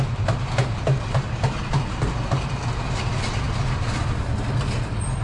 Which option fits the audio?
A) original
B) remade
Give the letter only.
A